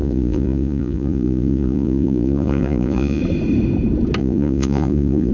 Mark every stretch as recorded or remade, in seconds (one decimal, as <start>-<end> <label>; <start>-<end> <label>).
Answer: 0.0-3.2 remade; 3.2-4.2 recorded; 4.2-5.3 remade